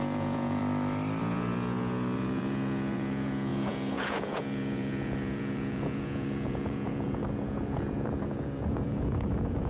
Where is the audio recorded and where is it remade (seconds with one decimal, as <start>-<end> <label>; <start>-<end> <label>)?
0.0-0.6 remade; 0.6-1.2 recorded; 1.2-9.7 remade